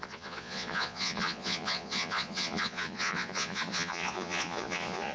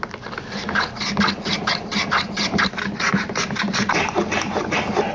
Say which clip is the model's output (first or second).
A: first